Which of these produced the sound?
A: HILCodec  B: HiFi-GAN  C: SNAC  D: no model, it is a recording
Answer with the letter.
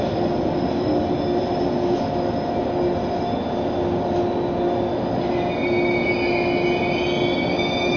D